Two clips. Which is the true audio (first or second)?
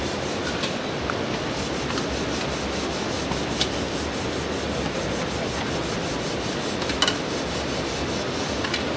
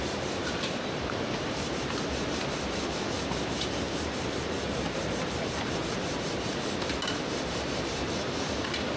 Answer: first